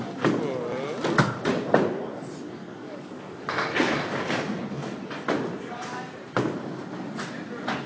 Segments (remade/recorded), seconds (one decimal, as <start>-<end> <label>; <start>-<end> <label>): 0.0-2.6 recorded; 2.6-3.4 remade; 3.4-7.9 recorded